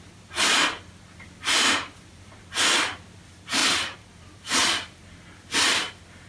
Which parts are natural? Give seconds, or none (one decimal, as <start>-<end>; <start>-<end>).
0.0-6.3